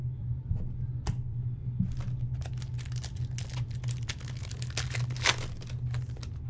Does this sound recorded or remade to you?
recorded